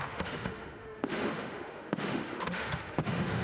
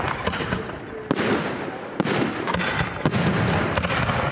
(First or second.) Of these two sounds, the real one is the second